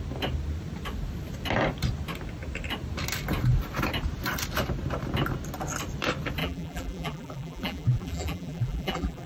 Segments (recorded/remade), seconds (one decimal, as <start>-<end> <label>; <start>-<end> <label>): 0.0-6.4 recorded; 6.4-9.3 remade